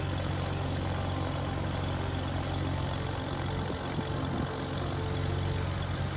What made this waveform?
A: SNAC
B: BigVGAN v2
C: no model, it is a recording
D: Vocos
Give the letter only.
C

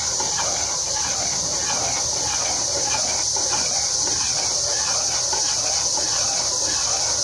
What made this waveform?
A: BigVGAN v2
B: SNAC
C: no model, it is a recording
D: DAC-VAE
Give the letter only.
C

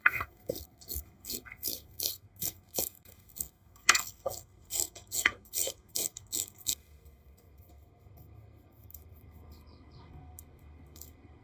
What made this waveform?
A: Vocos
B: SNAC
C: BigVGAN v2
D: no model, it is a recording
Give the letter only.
B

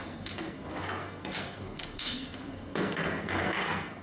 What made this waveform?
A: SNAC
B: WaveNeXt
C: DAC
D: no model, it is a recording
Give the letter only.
A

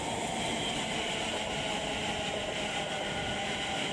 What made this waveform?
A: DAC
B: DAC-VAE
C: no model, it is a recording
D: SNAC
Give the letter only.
C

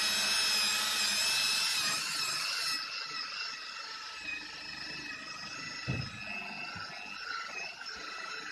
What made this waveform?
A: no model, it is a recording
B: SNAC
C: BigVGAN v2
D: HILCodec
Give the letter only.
A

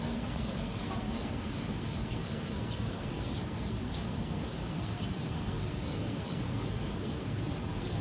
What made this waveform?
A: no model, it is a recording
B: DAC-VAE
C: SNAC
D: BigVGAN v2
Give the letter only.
C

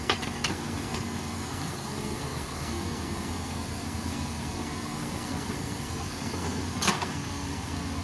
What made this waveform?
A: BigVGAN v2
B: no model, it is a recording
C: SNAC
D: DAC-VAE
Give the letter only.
C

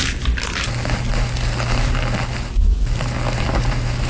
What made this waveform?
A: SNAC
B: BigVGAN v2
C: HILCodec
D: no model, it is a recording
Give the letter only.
D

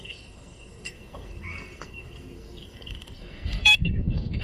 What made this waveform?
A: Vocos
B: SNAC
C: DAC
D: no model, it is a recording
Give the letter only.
B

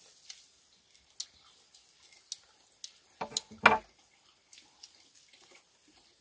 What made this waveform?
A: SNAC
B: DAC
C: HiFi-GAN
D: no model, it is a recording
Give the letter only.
D